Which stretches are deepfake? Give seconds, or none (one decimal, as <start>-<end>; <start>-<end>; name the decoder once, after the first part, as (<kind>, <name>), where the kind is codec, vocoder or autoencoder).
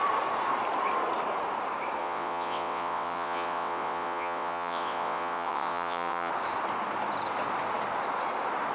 2.0-6.3 (vocoder, WaveNeXt)